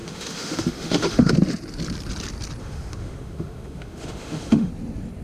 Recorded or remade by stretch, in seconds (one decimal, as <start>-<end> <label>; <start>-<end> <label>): 0.0-1.3 remade; 1.3-2.6 recorded; 2.6-4.7 remade; 4.7-5.2 recorded